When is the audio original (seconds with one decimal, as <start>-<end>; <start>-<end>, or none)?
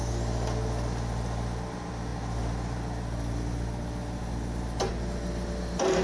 0.0-6.0